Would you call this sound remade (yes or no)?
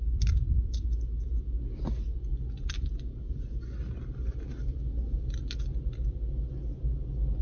no